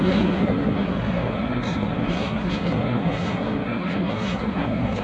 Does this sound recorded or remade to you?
remade